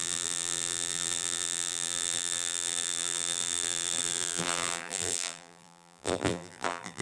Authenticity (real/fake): fake